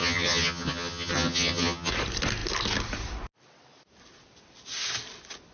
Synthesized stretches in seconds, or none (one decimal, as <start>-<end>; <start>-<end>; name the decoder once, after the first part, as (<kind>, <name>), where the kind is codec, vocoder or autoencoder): 0.0-1.9 (vocoder, HiFi-GAN)